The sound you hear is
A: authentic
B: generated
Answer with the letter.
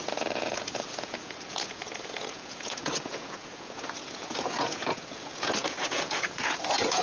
B